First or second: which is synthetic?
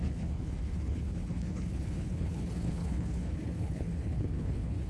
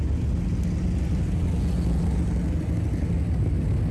first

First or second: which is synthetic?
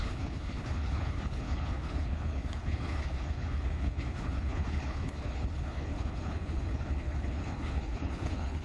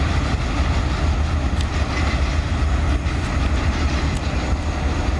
first